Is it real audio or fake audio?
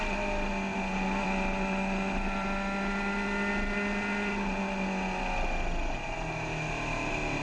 real